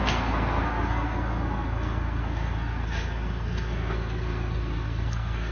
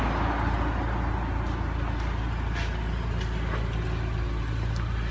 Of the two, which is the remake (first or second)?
first